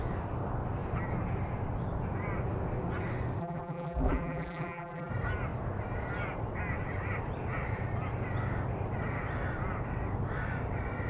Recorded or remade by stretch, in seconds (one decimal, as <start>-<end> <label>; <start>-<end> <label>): 0.0-3.4 recorded; 3.4-5.1 remade; 5.1-11.1 recorded